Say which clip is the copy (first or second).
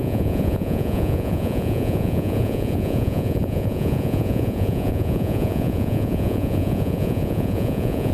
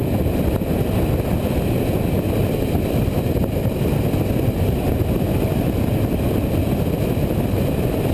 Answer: first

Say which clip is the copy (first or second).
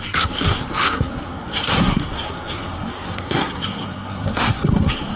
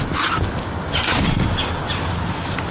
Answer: first